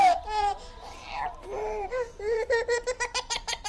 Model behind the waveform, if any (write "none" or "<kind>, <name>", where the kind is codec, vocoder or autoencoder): vocoder, BigVGAN v2